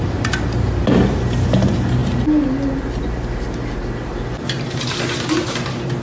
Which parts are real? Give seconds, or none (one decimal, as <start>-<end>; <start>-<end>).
0.0-6.0